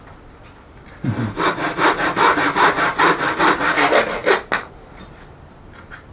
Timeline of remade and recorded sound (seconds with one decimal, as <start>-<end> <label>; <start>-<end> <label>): 0.0-6.1 recorded